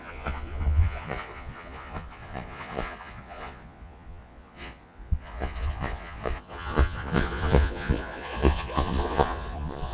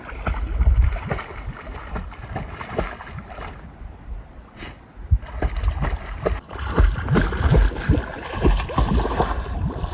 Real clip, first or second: second